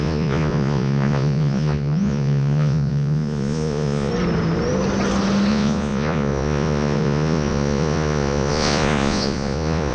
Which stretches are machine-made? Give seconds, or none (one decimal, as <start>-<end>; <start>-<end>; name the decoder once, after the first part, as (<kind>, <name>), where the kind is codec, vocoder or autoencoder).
0.0-4.1 (vocoder, Vocos); 5.5-9.9